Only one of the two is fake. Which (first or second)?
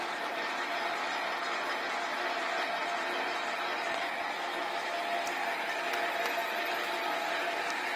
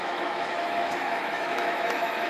second